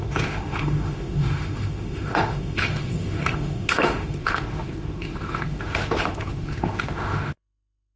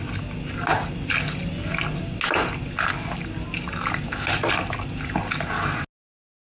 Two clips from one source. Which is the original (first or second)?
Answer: second